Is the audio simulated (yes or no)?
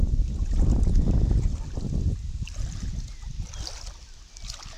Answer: no